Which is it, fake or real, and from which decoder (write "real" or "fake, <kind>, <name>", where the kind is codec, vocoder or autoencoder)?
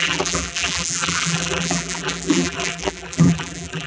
fake, vocoder, BigVGAN v2